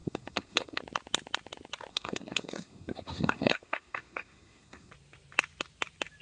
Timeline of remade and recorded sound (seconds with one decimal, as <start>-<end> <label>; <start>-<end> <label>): 0.0-0.8 remade; 0.8-1.9 recorded; 1.9-4.9 remade; 4.9-6.2 recorded